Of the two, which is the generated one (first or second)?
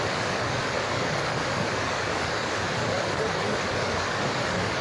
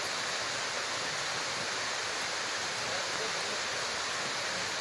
first